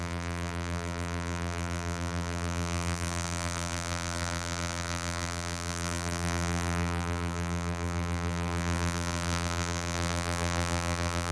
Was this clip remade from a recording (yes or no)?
yes